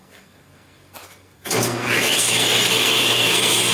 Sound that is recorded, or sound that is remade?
remade